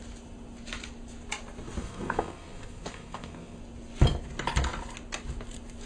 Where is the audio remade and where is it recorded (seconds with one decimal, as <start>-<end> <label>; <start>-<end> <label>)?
0.0-1.8 recorded; 1.8-3.6 remade; 3.6-5.9 recorded